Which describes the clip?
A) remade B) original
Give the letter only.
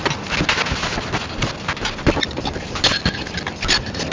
B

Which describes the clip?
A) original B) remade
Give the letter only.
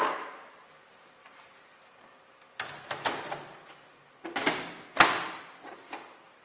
A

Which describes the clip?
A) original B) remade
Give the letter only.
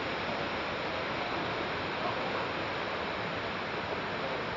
A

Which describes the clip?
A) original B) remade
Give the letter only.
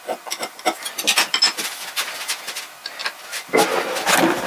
A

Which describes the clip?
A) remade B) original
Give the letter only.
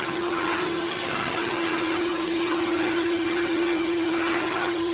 A